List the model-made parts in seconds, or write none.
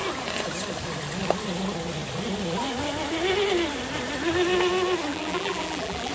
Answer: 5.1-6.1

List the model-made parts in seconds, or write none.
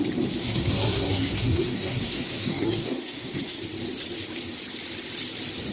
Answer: 0.4-3.6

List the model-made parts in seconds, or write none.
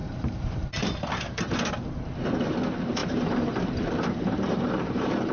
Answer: 0.0-1.7; 3.0-5.3